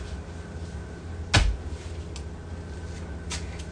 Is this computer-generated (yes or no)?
no